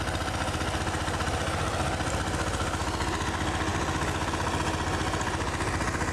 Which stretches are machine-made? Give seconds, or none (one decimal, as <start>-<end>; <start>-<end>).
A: none